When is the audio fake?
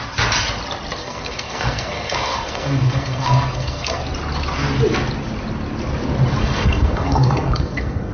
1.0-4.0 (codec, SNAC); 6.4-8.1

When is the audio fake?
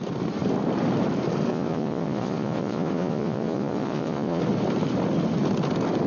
1.5-4.4 (vocoder, Vocos)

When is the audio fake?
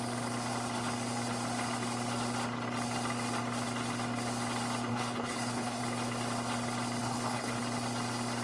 4.9-5.8 (codec, HILCodec); 7.0-7.6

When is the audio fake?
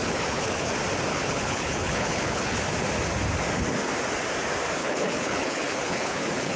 0.0-0.7 (codec, HILCodec); 1.1-2.6; 4.8-6.6